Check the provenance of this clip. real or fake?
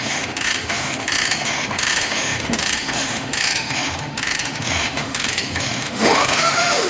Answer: fake